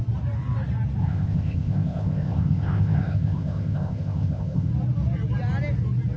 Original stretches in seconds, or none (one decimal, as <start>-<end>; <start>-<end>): 0.0-1.0; 4.7-6.2